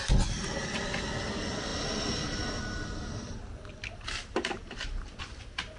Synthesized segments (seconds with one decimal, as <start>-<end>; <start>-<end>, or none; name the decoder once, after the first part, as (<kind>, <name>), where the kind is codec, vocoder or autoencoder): none